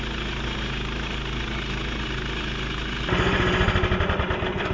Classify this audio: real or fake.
real